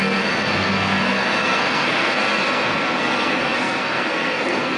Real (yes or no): no